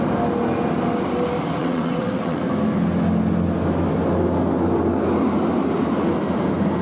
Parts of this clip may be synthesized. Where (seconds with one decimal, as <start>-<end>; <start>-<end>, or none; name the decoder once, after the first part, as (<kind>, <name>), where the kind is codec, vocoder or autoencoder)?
1.6-2.4 (vocoder, WaveNeXt)